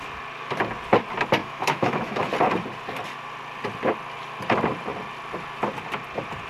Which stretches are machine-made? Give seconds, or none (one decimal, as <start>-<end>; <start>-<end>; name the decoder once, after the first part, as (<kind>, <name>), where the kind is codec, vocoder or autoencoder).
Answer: 1.4-2.3 (autoencoder, DAC-VAE)